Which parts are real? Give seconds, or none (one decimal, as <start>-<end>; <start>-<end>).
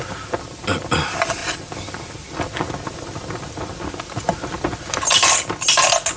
0.0-6.2